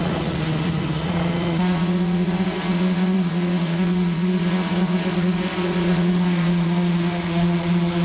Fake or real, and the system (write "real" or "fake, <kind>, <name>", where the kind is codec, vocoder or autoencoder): fake, vocoder, Vocos